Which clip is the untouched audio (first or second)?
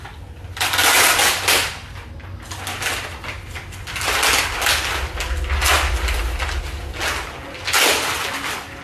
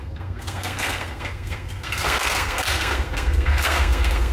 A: first